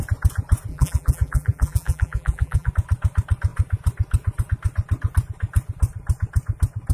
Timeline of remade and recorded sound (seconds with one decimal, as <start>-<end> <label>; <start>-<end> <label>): 0.0-0.7 recorded; 0.7-2.7 remade; 2.7-6.9 recorded